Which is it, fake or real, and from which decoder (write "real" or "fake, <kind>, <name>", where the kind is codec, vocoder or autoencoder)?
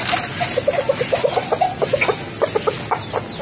real